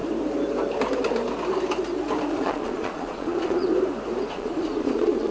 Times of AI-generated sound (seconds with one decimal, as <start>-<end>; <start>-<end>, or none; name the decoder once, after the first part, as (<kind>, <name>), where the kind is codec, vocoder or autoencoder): 2.3-3.7 (vocoder, Vocos); 4.3-5.3